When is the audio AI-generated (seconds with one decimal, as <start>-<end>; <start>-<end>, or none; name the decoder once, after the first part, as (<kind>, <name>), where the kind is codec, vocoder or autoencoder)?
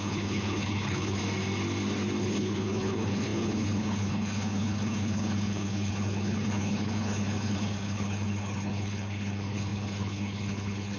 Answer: 0.0-1.2 (codec, HILCodec); 2.2-11.0